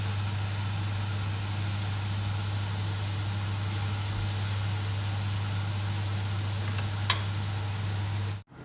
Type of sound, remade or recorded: recorded